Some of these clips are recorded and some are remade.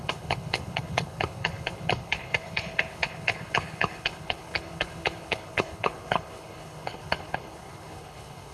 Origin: remade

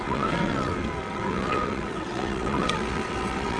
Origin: remade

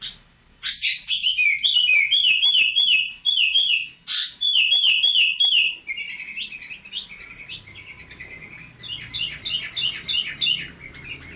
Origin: recorded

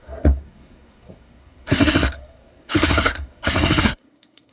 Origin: remade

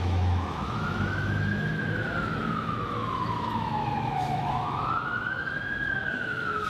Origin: remade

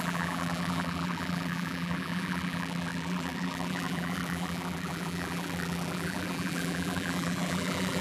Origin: remade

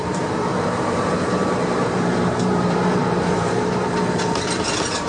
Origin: remade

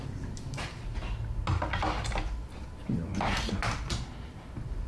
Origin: recorded